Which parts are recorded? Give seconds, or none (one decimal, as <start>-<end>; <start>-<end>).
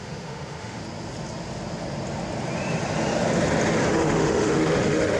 0.8-3.9